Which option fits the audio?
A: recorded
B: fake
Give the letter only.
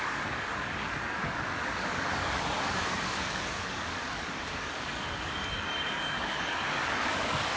B